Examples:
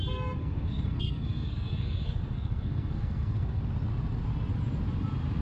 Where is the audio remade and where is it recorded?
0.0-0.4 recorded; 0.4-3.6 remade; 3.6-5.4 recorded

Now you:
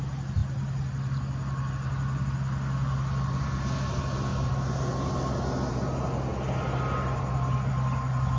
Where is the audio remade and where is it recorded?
0.0-8.4 recorded

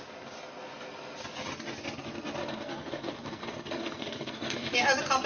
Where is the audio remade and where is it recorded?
0.0-2.4 recorded; 2.4-4.7 remade; 4.7-5.3 recorded

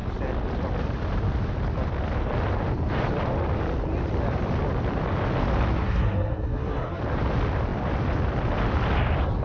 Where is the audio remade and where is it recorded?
0.0-5.8 recorded; 5.8-7.0 remade; 7.0-9.4 recorded

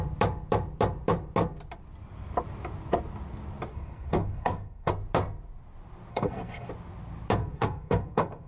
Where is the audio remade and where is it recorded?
0.0-3.7 recorded; 3.7-4.9 remade; 4.9-6.1 recorded; 6.1-6.7 remade; 6.7-7.4 recorded; 7.4-8.5 remade